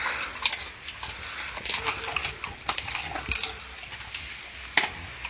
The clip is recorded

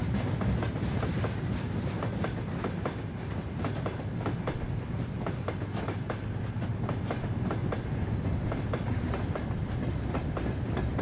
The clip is recorded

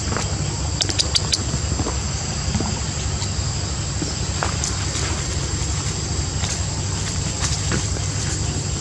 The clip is remade